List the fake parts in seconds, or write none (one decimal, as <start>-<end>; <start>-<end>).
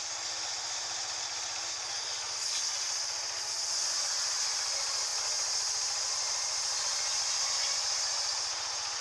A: none